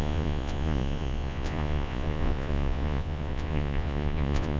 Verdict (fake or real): fake